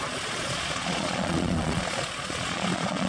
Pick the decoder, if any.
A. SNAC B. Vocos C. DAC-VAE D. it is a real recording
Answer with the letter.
B